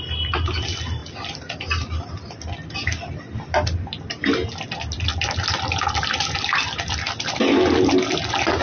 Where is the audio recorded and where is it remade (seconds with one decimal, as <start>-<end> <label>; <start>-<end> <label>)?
0.0-8.6 recorded